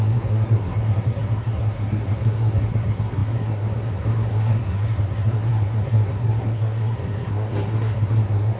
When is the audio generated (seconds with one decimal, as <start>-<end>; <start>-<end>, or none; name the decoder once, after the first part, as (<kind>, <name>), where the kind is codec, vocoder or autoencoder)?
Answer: 0.0-8.6 (codec, SNAC)